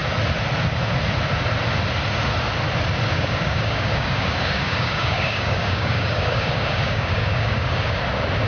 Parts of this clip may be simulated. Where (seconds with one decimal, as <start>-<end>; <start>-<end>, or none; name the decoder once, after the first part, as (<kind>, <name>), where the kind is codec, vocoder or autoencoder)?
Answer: 3.1-8.0 (codec, DAC)